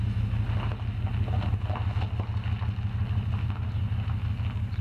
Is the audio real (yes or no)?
yes